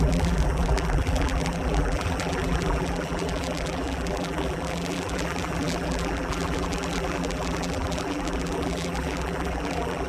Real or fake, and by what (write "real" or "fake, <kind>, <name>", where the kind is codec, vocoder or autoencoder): fake, vocoder, BigVGAN v2